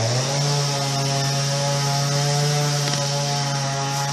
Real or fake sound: real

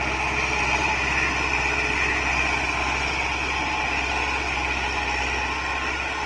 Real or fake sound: real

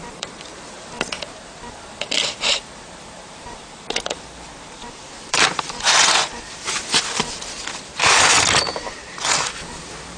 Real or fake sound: fake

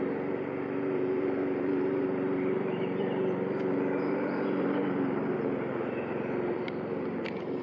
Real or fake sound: fake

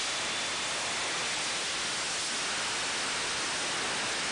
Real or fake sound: real